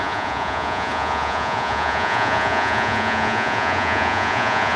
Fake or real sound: fake